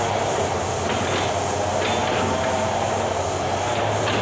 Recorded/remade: recorded